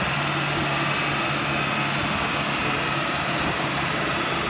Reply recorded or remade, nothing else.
recorded